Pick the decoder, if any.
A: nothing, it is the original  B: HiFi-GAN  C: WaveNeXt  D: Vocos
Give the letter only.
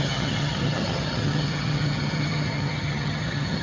B